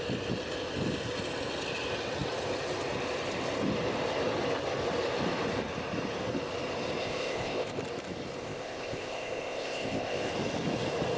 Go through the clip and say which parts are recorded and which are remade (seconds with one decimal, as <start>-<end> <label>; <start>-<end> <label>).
0.0-7.0 recorded; 7.0-7.8 remade; 7.8-8.4 recorded; 8.4-10.3 remade; 10.3-11.2 recorded